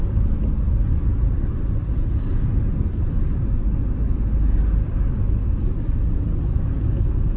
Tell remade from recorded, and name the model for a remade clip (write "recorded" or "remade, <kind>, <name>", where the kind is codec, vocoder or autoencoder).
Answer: recorded